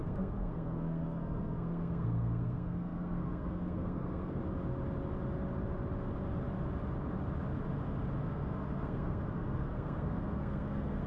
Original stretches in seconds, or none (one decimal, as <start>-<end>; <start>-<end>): 4.4-8.2